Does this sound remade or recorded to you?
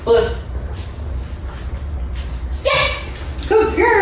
recorded